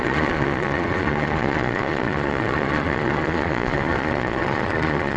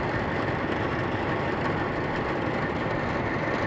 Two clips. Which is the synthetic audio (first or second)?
first